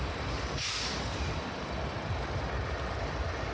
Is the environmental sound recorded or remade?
recorded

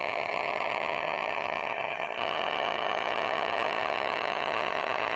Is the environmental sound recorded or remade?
remade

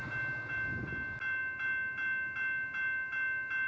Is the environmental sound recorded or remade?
recorded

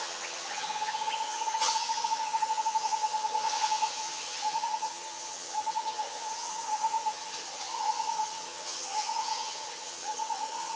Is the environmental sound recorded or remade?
remade